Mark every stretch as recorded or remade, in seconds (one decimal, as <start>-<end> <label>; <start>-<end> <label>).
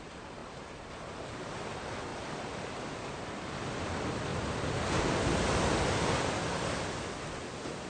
0.0-0.4 recorded; 0.4-1.1 remade; 1.1-2.1 recorded; 2.1-2.7 remade; 2.7-7.9 recorded